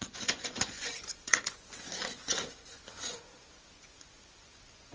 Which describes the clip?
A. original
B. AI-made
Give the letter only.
B